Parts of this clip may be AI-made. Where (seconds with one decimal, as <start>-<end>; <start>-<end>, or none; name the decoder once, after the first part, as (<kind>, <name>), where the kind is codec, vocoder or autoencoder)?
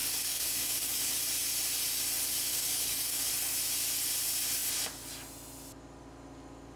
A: 0.0-1.1 (codec, DAC); 2.5-3.3